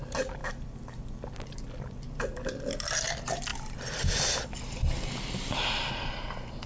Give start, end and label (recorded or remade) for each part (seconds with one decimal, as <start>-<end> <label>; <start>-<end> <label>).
0.0-0.4 recorded; 0.4-1.5 remade; 1.5-3.5 recorded; 3.5-4.1 remade; 4.1-6.7 recorded